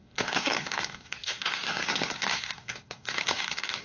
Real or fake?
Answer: fake